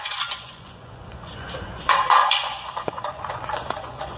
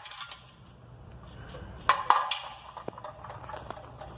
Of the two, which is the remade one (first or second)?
first